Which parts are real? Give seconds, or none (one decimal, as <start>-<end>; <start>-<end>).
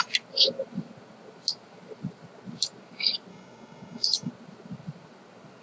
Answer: 0.0-3.3; 4.3-5.6